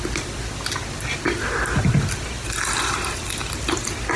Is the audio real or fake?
real